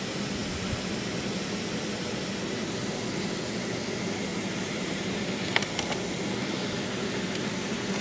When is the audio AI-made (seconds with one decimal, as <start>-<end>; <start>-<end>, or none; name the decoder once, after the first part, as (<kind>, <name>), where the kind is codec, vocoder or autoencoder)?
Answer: 4.3-5.1 (vocoder, BigVGAN v2)